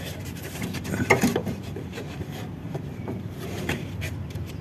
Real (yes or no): no